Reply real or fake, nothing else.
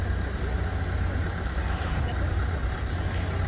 real